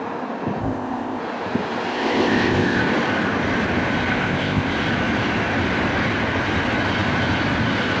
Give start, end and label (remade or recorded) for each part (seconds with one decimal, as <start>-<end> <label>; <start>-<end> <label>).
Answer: 0.0-0.6 recorded; 0.6-1.2 remade; 1.2-1.9 recorded; 1.9-2.8 remade; 2.8-4.1 recorded; 4.1-4.7 remade; 4.7-8.0 recorded